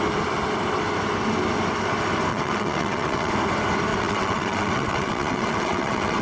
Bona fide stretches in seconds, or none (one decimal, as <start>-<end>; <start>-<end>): 0.0-2.3; 3.3-3.9